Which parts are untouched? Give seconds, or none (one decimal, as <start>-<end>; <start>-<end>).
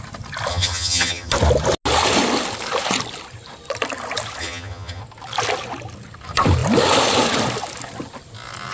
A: 0.0-0.5; 1.3-4.4; 5.0-8.7